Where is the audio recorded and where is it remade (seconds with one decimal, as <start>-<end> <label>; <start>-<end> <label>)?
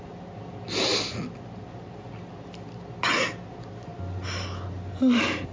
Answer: 0.0-5.5 recorded